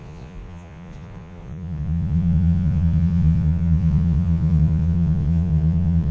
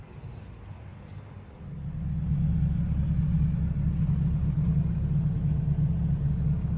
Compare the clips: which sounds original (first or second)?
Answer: second